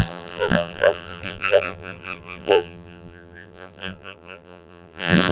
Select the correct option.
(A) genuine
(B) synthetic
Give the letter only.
B